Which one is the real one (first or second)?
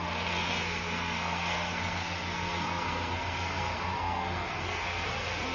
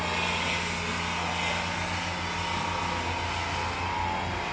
second